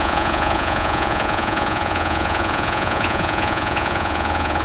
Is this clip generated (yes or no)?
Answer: yes